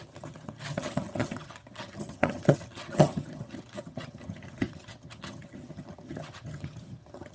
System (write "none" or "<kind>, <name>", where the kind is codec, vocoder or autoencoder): vocoder, HiFi-GAN